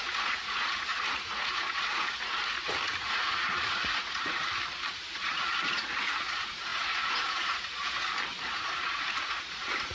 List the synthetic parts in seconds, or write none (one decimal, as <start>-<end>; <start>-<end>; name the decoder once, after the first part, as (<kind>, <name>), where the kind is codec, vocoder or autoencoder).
0.0-4.4 (vocoder, Vocos); 4.9-7.8; 8.4-9.9